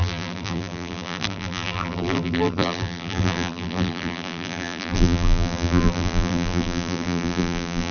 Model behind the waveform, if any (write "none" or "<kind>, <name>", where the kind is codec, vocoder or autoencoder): vocoder, BigVGAN v2